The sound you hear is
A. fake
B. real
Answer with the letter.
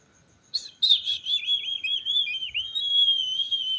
B